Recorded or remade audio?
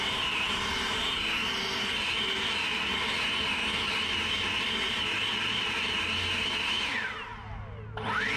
recorded